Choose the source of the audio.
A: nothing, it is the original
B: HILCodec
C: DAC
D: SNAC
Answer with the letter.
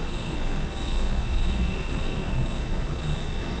D